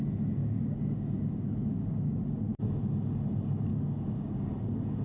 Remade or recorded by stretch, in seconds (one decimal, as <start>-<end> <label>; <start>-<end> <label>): 0.0-0.4 recorded; 0.4-2.2 remade; 2.2-3.7 recorded; 3.7-4.4 remade; 4.4-5.0 recorded